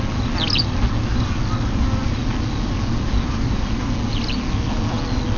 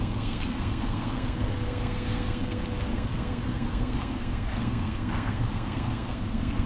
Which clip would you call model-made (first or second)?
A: second